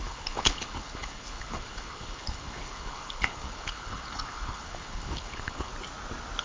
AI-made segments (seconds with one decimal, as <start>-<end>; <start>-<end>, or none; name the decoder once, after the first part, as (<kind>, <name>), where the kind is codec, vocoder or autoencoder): 0.0-5.7 (codec, HILCodec)